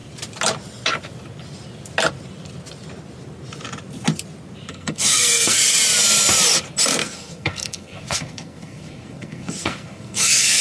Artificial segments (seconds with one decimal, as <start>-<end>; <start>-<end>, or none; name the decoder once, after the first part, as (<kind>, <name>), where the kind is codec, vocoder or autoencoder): 4.7-5.6 (codec, SNAC); 7.0-10.6